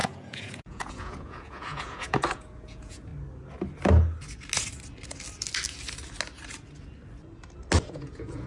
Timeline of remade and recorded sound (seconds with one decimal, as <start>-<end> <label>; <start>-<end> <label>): 0.0-3.1 remade; 3.1-7.9 recorded; 7.9-8.5 remade